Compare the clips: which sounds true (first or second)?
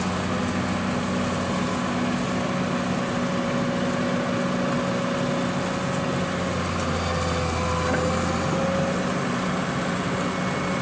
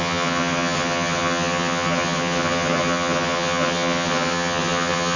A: first